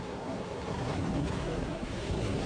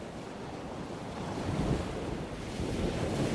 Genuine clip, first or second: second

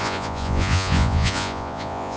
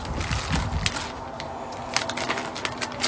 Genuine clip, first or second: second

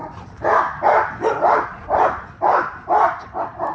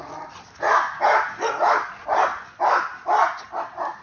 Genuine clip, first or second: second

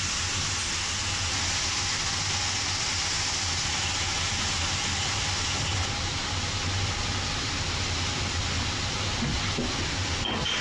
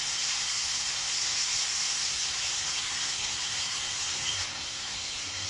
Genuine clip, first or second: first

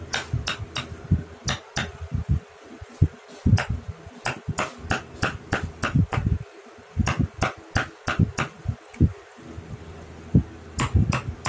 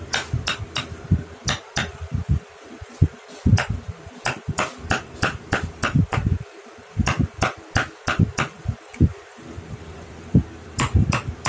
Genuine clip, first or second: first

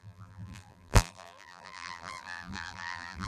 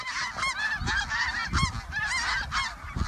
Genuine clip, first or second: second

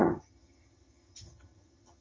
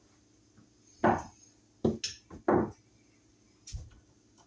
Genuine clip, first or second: second